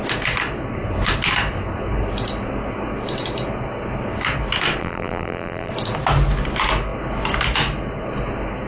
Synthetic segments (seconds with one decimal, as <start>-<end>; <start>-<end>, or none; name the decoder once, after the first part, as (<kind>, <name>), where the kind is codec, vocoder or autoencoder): 4.8-5.7 (vocoder, BigVGAN v2)

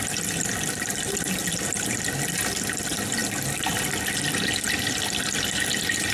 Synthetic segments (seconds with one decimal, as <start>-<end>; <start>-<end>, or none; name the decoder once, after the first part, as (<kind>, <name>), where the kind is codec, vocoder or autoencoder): none

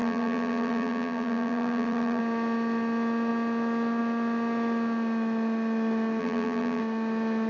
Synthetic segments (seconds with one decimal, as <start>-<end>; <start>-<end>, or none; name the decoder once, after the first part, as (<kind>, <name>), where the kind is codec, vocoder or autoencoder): 0.0-2.2 (vocoder, BigVGAN v2); 6.2-6.8

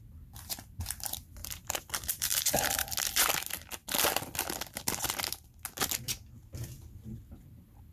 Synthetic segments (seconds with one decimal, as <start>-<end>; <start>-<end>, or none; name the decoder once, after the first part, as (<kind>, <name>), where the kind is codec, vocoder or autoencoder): 1.4-2.9 (vocoder, BigVGAN v2)